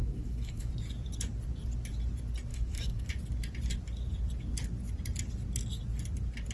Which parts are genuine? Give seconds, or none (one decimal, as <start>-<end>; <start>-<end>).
0.7-2.5; 3.1-6.5